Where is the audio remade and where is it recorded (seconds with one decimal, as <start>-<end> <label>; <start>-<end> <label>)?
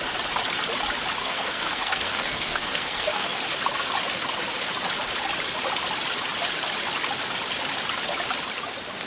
0.0-1.2 recorded; 1.2-3.4 remade; 3.4-9.1 recorded